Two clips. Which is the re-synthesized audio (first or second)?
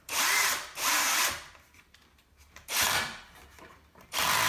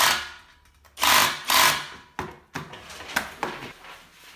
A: first